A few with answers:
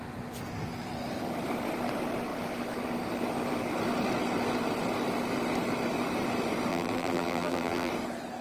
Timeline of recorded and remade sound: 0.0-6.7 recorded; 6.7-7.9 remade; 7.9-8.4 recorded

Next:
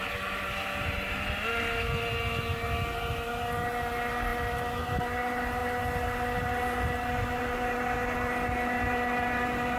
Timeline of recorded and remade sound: 0.0-9.8 remade

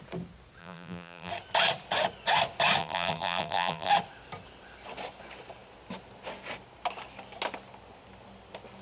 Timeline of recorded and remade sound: 0.0-0.6 recorded; 0.6-1.3 remade; 1.3-2.8 recorded; 2.8-3.9 remade; 3.9-8.8 recorded